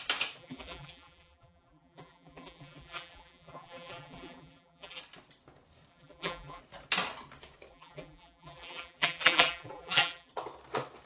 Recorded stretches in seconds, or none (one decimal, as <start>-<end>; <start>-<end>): 0.0-0.4; 5.0-5.9; 6.6-7.7; 10.3-11.1